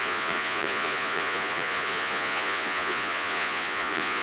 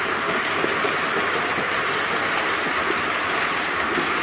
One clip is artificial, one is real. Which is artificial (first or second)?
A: first